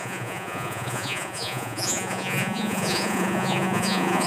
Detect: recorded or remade remade